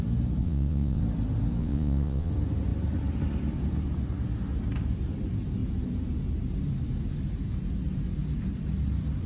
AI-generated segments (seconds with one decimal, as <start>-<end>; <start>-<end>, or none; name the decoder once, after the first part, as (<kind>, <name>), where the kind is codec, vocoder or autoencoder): 0.4-1.0 (vocoder, WaveNeXt); 1.6-2.3